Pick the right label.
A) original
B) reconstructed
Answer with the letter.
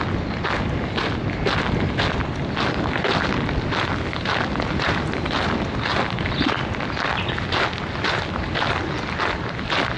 A